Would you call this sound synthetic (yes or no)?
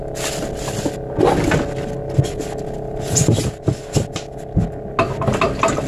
no